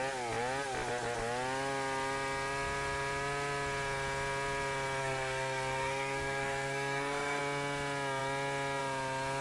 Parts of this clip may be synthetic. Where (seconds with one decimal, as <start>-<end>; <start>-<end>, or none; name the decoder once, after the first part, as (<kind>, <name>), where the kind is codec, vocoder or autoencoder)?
5.0-7.4 (codec, SNAC)